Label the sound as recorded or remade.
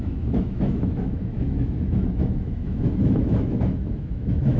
remade